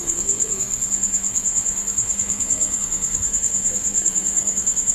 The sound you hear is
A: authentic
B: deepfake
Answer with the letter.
B